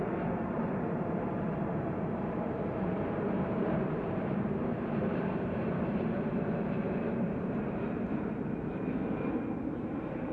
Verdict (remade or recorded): remade